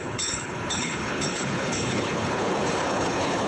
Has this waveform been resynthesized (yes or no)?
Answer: yes